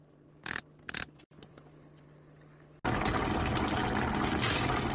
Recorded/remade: recorded